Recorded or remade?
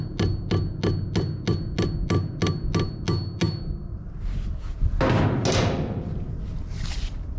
recorded